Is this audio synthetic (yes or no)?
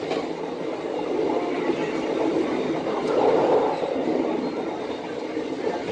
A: no